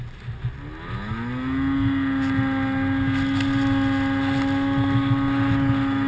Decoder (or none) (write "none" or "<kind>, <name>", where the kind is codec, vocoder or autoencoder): none